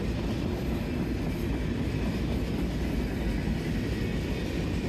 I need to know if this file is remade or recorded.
recorded